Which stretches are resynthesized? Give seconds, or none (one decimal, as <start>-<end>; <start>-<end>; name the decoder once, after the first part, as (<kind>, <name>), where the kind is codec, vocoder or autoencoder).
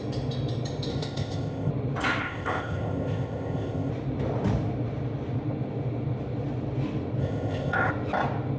0.9-1.7 (codec, ZipCodec); 2.2-3.9; 7.2-7.9